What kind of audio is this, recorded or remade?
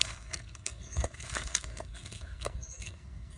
remade